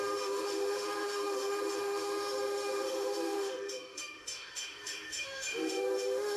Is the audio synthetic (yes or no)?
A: yes